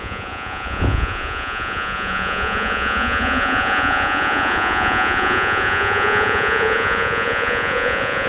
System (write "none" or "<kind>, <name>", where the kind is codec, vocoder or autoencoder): vocoder, Vocos